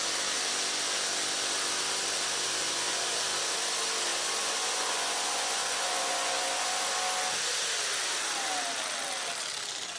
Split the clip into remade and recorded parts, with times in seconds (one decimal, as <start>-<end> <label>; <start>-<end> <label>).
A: 0.0-2.6 recorded; 2.6-3.2 remade; 3.2-4.1 recorded; 4.1-6.7 remade; 6.7-10.0 recorded